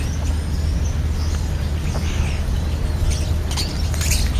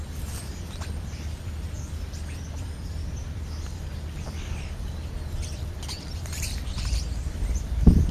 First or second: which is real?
first